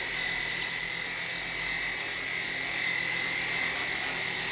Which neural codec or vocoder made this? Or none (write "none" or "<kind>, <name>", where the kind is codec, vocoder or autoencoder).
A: none